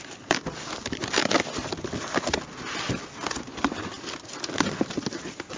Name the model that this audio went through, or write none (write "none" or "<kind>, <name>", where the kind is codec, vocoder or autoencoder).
none